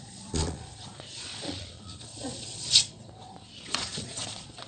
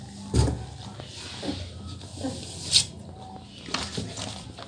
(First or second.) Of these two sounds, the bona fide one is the second